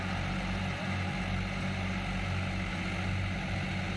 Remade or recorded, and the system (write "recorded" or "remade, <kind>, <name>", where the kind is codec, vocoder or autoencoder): recorded